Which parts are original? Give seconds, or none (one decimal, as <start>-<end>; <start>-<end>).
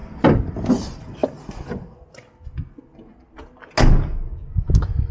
0.0-5.1